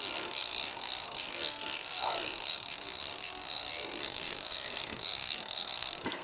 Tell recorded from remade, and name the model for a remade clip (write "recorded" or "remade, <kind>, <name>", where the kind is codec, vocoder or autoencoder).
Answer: remade, codec, SNAC